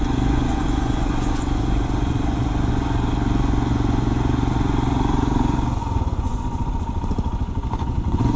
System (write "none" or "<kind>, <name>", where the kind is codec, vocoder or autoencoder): vocoder, Vocos